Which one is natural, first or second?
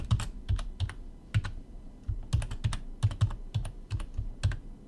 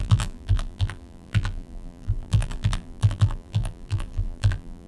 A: first